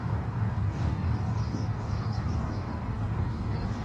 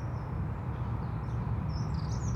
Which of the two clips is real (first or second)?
second